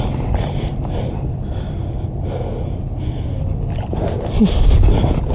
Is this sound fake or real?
real